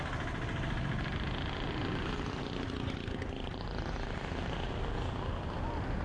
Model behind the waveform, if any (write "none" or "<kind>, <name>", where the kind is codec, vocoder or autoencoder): none